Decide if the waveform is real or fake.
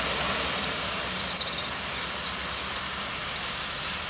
real